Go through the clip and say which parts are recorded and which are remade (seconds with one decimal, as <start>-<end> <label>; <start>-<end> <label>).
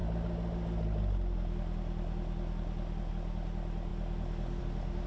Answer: 0.0-5.1 recorded